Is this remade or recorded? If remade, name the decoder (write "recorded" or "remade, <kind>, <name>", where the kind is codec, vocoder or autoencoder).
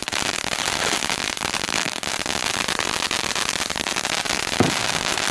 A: remade, vocoder, BigVGAN v2